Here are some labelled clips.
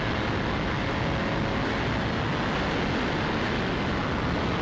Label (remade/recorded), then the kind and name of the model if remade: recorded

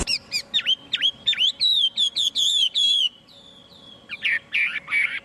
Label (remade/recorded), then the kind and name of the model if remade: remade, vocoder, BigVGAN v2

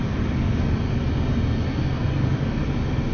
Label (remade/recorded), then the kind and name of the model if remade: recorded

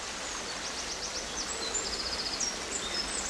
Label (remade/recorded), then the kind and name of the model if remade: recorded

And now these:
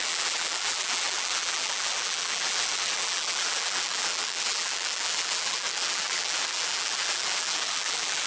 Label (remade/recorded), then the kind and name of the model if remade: remade, vocoder, BigVGAN v2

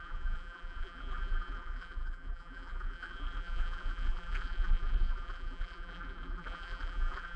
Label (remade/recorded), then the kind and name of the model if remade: remade, vocoder, BigVGAN v2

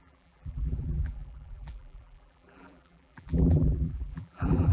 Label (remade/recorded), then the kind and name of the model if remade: remade, vocoder, BigVGAN v2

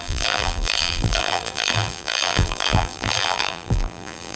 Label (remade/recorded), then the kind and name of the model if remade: remade, vocoder, BigVGAN v2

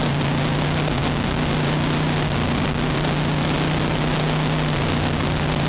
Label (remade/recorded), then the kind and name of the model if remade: recorded